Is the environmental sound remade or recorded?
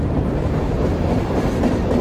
remade